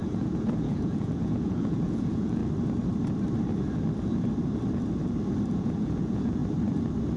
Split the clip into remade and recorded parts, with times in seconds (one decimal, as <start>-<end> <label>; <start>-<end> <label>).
0.0-2.4 remade; 2.4-5.6 recorded; 5.6-6.4 remade; 6.4-7.2 recorded